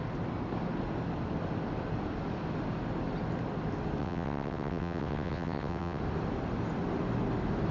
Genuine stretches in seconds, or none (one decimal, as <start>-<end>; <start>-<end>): 0.0-4.0; 6.0-7.7